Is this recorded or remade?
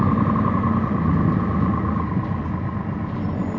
recorded